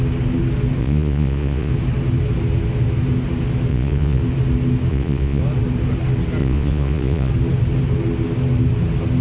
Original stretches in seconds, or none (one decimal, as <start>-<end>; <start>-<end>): 0.0-0.8; 1.7-3.7; 4.2-4.9; 5.4-6.4; 7.3-9.2